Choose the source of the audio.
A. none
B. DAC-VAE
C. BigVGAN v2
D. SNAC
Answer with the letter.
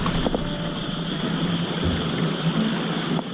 A